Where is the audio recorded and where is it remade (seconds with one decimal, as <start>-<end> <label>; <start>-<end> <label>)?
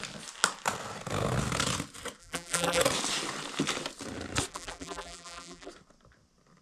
0.0-2.2 recorded; 2.2-2.8 remade; 2.8-4.5 recorded; 4.5-5.7 remade; 5.7-6.6 recorded